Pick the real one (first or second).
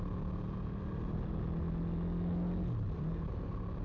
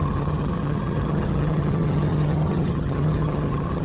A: first